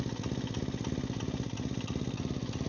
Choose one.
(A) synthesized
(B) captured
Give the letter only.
B